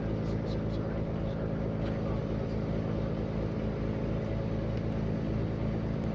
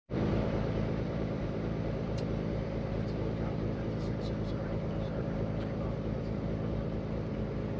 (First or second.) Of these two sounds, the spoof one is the second